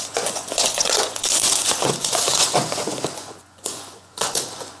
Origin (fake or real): fake